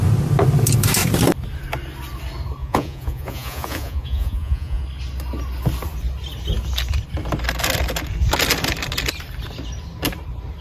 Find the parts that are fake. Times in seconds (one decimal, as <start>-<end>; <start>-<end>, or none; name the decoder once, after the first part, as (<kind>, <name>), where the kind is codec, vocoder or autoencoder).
2.6-4.8 (vocoder, Vocos)